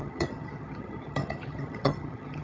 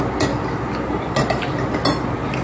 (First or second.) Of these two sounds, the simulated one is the first